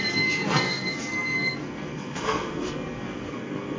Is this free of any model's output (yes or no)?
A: no